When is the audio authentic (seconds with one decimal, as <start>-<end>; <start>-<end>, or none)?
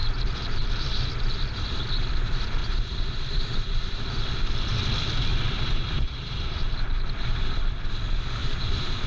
0.0-2.6; 3.7-5.3; 6.6-8.4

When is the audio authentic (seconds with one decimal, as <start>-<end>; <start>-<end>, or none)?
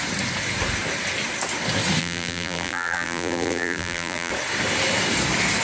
0.0-2.0; 4.3-5.6